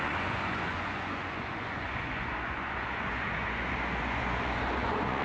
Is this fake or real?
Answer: fake